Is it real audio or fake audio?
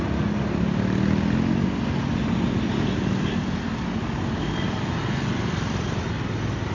real